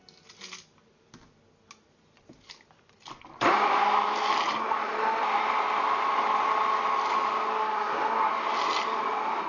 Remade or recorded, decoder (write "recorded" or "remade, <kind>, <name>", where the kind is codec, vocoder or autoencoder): recorded